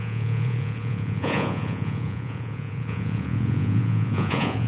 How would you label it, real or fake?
fake